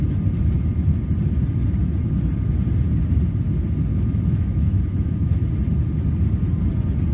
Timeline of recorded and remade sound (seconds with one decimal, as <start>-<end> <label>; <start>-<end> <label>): 0.0-3.9 recorded; 3.9-5.5 remade; 5.5-7.1 recorded